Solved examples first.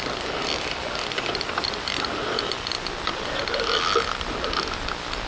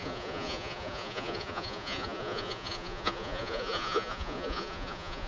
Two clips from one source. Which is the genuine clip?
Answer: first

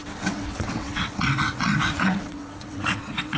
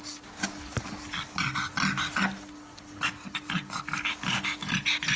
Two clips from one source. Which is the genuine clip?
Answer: second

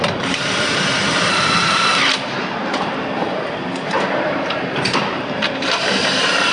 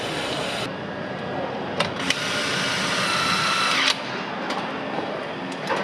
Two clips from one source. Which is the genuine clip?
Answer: second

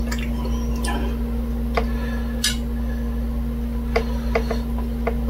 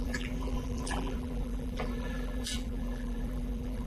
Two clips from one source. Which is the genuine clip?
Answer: first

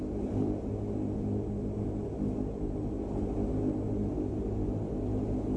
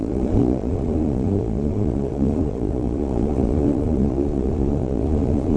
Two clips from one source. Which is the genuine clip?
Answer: first